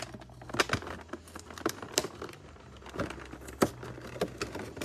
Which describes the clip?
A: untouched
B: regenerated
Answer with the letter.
A